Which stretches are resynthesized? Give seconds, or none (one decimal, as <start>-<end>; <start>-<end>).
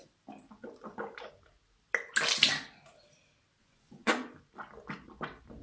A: 3.6-4.1